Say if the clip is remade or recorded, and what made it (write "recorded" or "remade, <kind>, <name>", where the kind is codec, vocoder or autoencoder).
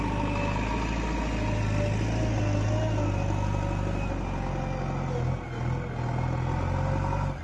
recorded